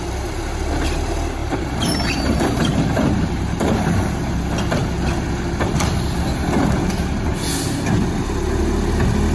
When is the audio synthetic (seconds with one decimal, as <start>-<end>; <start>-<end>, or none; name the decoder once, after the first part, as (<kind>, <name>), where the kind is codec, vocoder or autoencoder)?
1.4-4.1 (vocoder, BigVGAN v2)